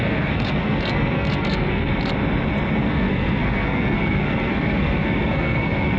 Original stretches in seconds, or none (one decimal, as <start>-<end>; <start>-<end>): 1.9-2.8